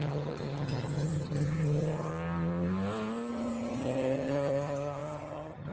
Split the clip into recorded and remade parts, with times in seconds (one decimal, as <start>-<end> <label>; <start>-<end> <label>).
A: 0.0-2.1 remade; 2.1-3.3 recorded; 3.3-5.7 remade